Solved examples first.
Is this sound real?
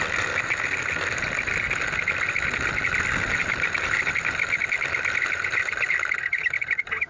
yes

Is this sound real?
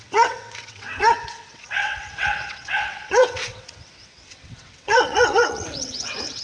no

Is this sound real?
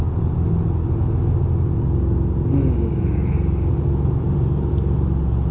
yes